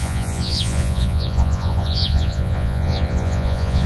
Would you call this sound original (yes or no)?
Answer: no